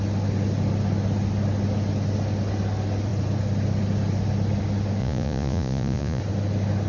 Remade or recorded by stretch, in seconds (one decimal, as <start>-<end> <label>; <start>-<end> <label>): 0.0-5.0 recorded; 5.0-6.2 remade; 6.2-6.9 recorded